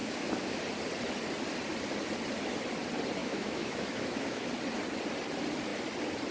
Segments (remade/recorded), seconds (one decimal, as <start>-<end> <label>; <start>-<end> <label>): 0.0-0.6 remade; 0.6-3.2 recorded; 3.2-4.5 remade; 4.5-6.3 recorded